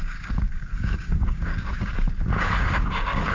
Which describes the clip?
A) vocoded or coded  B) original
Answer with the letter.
A